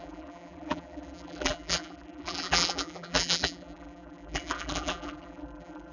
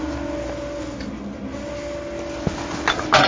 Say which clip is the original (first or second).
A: second